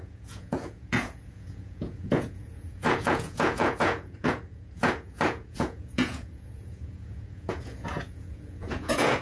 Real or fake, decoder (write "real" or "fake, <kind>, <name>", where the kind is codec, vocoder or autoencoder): fake, vocoder, Vocos